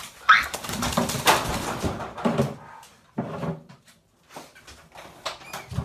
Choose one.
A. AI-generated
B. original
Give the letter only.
B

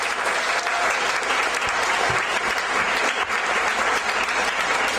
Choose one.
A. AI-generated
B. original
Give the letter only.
A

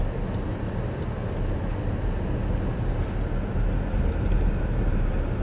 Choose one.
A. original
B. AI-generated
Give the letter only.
A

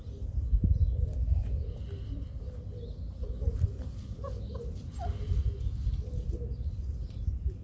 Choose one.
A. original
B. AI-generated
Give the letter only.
A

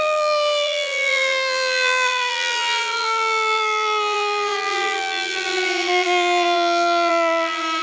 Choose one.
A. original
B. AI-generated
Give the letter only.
B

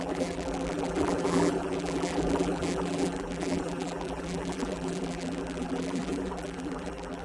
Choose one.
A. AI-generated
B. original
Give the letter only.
A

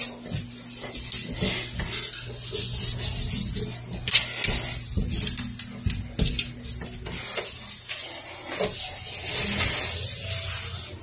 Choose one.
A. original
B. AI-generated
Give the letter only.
A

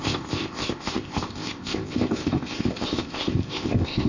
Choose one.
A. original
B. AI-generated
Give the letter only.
B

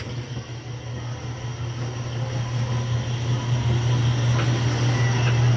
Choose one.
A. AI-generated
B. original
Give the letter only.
B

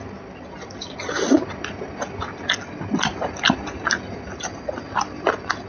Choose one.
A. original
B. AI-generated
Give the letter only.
A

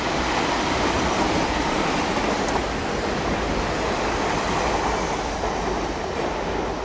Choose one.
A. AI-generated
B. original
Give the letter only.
B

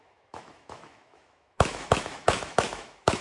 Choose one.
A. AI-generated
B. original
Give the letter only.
A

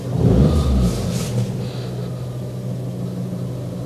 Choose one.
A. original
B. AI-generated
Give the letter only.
A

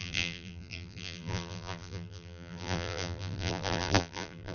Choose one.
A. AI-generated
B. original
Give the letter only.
A